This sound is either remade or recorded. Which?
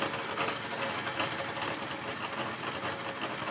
recorded